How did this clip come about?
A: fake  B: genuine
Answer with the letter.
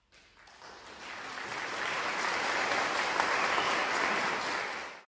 B